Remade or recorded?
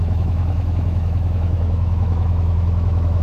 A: remade